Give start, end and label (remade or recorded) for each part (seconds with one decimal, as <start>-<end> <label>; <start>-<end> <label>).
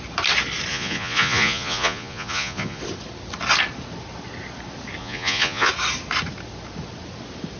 0.0-0.7 recorded; 0.7-2.8 remade; 2.8-5.0 recorded; 5.0-5.7 remade; 5.7-7.6 recorded